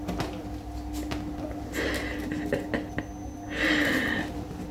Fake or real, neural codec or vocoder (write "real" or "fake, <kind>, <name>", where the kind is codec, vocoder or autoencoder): real